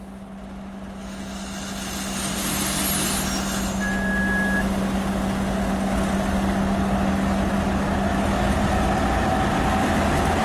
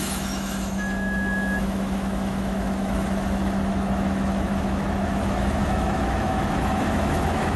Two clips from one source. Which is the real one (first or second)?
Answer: first